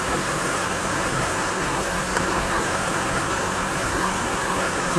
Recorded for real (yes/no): no